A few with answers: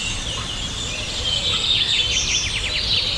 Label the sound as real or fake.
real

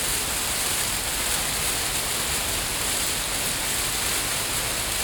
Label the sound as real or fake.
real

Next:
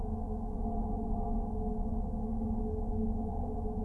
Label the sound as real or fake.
real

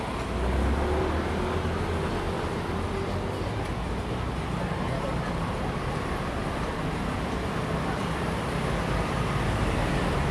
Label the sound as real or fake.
real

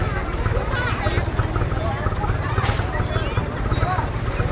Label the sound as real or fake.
real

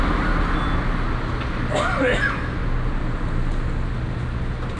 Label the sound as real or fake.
real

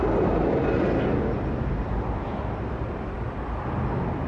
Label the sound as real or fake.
real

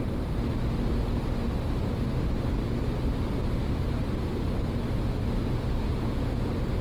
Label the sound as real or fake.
real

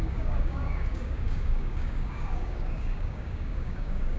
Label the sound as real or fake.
fake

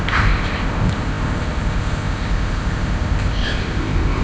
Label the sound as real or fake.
fake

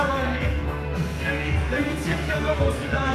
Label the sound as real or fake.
fake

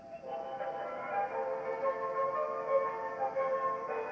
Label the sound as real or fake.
real